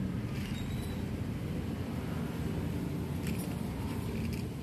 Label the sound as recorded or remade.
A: recorded